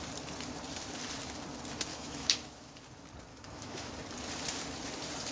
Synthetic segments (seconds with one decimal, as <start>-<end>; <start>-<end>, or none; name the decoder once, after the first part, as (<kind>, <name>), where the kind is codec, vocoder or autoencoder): 1.9-2.7 (autoencoder, DAC-VAE); 3.3-3.9